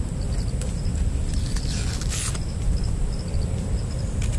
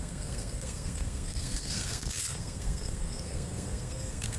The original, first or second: first